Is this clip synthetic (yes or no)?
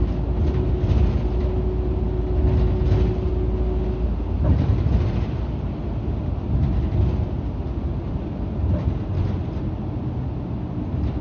no